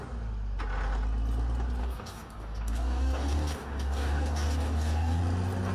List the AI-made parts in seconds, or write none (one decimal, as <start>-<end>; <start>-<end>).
1.8-5.2